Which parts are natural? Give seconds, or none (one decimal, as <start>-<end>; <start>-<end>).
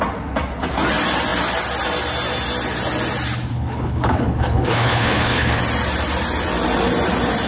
0.0-3.5; 5.6-7.5